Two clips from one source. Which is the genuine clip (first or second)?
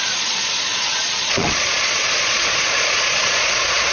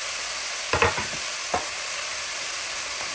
second